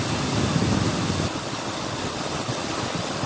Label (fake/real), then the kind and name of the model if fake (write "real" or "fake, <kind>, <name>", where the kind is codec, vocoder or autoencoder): real